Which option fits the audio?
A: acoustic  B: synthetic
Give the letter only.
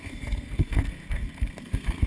B